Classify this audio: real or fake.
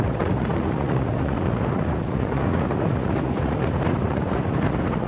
fake